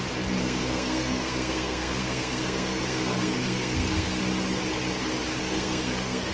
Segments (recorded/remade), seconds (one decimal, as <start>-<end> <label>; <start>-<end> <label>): 0.0-0.4 recorded; 0.4-4.2 remade; 4.2-5.4 recorded; 5.4-6.3 remade